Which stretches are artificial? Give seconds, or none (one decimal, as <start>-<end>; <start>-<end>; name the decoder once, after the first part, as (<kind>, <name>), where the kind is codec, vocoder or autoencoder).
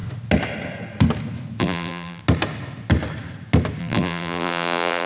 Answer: 1.6-2.2 (vocoder, BigVGAN v2); 3.8-5.1